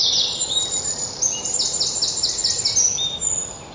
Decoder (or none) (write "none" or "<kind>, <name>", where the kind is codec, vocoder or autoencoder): none